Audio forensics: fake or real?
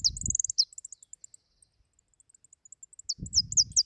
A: real